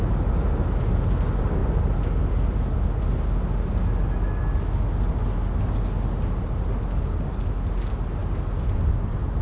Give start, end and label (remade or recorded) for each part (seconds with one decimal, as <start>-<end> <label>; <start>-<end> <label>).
0.0-9.4 recorded